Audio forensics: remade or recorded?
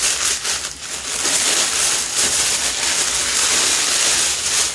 recorded